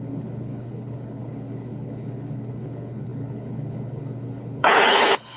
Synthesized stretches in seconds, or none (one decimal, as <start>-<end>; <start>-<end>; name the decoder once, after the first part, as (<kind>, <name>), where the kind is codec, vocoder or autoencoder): 0.0-5.4 (codec, HILCodec)